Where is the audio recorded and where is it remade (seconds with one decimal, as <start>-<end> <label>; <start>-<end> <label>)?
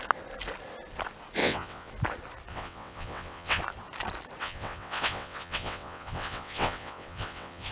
0.0-1.4 recorded; 1.4-1.9 remade; 1.9-2.5 recorded; 2.5-3.6 remade; 3.6-4.4 recorded; 4.4-7.7 remade